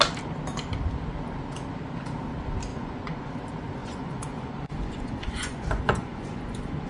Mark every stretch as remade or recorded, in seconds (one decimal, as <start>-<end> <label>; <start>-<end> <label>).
0.0-2.7 recorded; 2.7-3.3 remade; 3.3-3.8 recorded; 3.8-6.9 remade